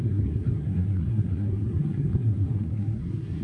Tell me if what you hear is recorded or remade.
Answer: remade